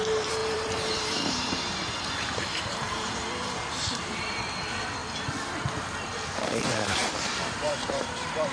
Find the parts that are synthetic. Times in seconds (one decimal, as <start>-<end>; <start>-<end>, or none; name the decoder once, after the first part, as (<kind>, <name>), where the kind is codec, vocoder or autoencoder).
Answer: 0.0-5.0 (vocoder, BigVGAN v2); 6.0-8.5